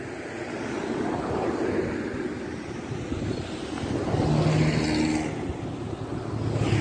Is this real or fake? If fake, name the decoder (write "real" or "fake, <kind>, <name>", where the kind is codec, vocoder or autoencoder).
real